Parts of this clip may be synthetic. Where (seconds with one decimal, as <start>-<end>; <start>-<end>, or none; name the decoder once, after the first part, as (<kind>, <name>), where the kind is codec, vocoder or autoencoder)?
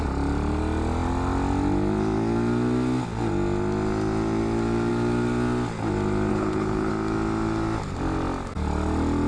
6.3-6.9 (codec, HILCodec)